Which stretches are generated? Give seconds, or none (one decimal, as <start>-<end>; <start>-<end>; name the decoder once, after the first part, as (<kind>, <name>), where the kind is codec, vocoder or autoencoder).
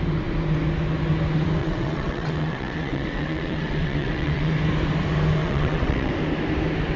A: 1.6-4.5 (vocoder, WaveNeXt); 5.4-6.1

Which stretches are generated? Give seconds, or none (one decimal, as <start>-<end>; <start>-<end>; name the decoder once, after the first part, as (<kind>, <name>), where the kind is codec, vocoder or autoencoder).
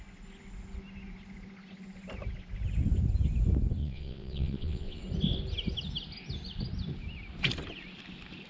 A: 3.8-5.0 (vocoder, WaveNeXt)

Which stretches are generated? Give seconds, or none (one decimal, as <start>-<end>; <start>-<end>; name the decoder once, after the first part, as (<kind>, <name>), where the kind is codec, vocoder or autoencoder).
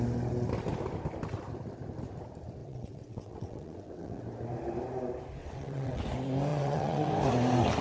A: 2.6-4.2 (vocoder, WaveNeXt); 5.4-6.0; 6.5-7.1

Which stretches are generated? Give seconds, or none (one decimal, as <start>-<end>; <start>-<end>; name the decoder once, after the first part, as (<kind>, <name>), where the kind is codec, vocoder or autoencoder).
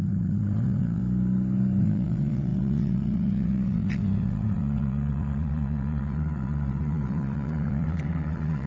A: 0.0-1.0 (vocoder, WaveNeXt); 1.8-8.7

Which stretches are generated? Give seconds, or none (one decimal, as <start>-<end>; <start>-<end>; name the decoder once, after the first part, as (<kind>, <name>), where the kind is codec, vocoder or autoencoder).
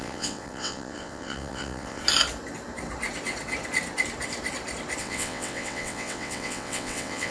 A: 0.0-2.0 (vocoder, WaveNeXt); 5.0-7.3